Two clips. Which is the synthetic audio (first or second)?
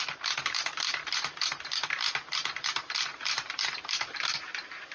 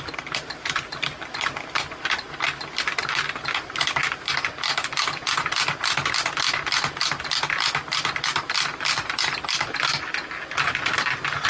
first